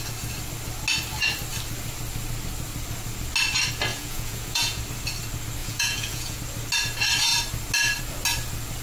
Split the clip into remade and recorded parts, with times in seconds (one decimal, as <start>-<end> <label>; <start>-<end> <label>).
0.0-3.9 recorded; 3.9-4.8 remade; 4.8-5.6 recorded; 5.6-6.4 remade; 6.4-8.8 recorded